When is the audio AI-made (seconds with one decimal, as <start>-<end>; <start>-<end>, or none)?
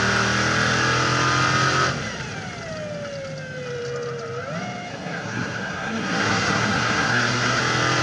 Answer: 4.9-7.6